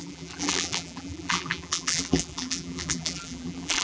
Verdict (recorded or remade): remade